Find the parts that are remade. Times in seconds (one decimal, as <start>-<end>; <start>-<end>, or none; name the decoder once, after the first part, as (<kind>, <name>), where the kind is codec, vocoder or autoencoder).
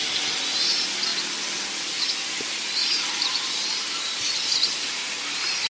2.8-3.5 (vocoder, BigVGAN v2)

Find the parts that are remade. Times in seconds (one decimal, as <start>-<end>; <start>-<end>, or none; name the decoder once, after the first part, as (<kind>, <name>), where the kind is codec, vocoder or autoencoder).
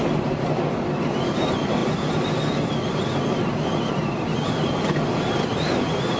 1.8-2.9 (vocoder, BigVGAN v2)